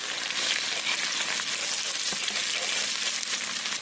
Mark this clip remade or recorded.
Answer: recorded